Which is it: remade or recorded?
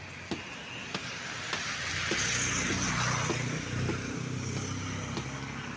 recorded